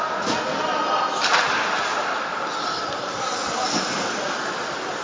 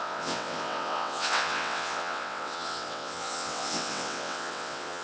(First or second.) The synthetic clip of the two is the second